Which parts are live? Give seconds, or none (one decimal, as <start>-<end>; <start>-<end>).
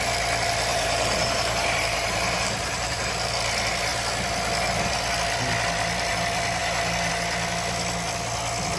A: 0.0-0.7; 3.1-8.8